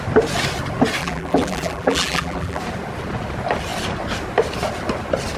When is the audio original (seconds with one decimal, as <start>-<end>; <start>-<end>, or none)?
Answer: 0.0-1.0; 2.6-5.4